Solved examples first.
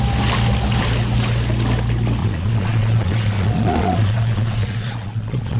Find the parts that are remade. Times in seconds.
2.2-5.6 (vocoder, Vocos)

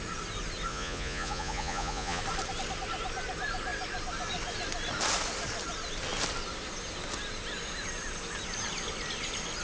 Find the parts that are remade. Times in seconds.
0.7-2.2 (vocoder, Vocos)